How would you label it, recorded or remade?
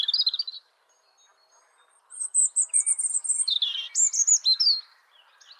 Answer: recorded